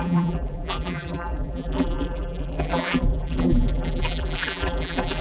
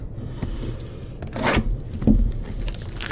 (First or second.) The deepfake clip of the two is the first